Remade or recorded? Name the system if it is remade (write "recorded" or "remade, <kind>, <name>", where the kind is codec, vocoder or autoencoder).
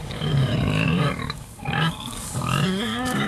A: remade, codec, DAC